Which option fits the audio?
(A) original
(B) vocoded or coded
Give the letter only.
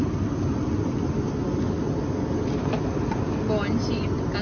A